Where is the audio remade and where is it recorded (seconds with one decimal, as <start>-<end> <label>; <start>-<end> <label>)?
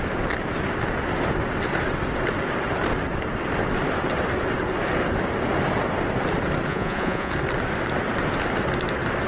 0.0-6.7 recorded; 6.7-7.3 remade; 7.3-9.3 recorded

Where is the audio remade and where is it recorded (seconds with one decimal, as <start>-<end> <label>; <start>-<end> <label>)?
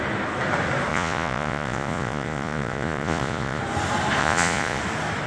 0.0-0.9 recorded; 0.9-3.6 remade; 3.6-4.2 recorded; 4.2-4.8 remade; 4.8-5.3 recorded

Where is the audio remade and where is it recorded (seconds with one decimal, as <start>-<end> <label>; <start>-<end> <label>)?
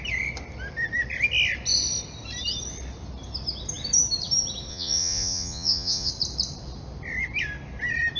0.0-4.7 recorded; 4.7-6.1 remade; 6.1-8.2 recorded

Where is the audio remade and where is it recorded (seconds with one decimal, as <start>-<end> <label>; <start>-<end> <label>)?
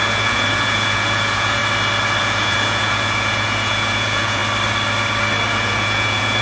0.0-1.6 remade; 1.6-2.2 recorded; 2.2-4.4 remade; 4.4-5.5 recorded; 5.5-6.4 remade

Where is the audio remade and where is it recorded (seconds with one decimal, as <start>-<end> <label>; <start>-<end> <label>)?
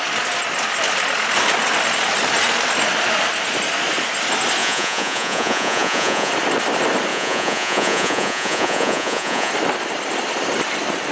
0.0-4.6 recorded; 4.6-6.3 remade; 6.3-7.1 recorded; 7.1-9.5 remade; 9.5-11.1 recorded